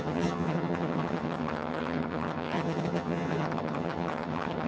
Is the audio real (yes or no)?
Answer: no